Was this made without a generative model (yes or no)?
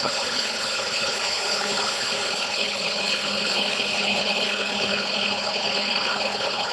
no